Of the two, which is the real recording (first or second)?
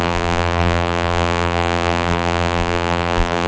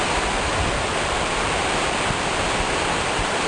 second